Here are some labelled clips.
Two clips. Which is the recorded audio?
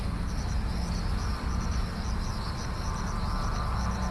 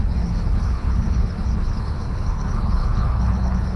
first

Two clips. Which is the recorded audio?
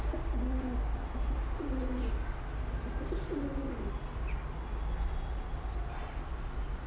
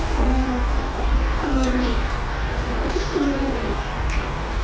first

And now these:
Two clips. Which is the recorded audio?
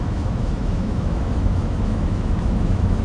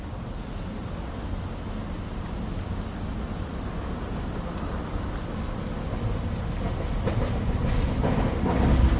second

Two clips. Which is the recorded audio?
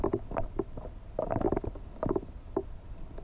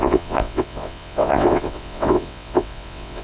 first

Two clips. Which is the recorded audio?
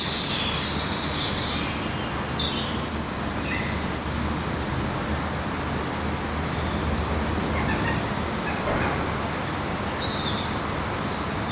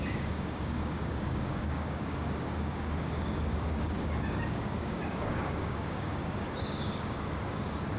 first